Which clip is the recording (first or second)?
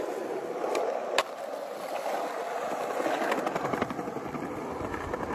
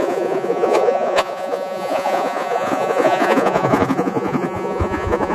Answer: first